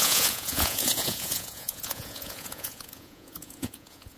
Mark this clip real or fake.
fake